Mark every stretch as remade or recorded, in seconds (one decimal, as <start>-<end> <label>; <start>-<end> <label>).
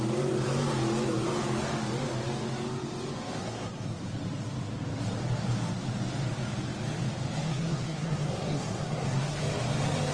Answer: 0.0-3.4 recorded; 3.4-4.0 remade; 4.0-7.5 recorded; 7.5-9.4 remade; 9.4-10.1 recorded